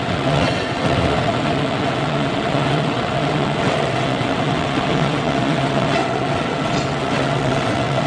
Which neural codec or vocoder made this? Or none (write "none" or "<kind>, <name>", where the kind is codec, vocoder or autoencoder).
vocoder, WaveNeXt